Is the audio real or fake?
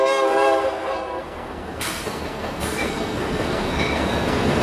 fake